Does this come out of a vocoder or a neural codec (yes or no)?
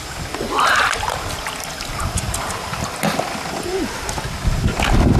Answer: no